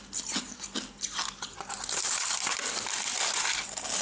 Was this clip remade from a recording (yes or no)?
no